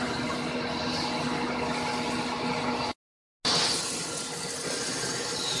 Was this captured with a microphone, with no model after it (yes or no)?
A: yes